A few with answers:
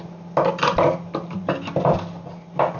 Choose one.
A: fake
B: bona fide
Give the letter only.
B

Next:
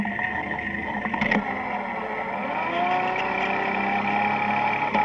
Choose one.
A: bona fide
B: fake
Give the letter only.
A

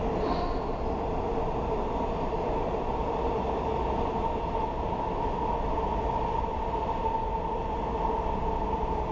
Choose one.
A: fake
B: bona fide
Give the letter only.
B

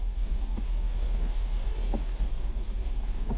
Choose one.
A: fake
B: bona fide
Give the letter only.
A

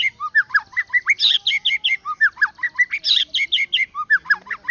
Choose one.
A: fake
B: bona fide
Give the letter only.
B